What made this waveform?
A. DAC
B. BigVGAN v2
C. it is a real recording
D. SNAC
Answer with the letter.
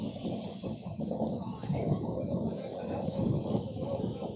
A